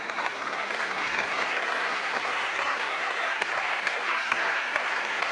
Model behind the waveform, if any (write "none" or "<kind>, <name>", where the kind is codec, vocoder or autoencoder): codec, SNAC